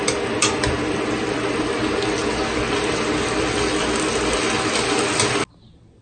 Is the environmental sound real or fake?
real